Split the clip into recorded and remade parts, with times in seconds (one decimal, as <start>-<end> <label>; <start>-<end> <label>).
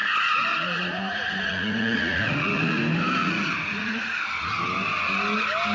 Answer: 0.0-2.8 remade; 2.8-3.2 recorded; 3.2-4.2 remade; 4.2-5.7 recorded